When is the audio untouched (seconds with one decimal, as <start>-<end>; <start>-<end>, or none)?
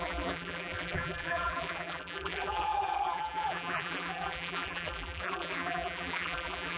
none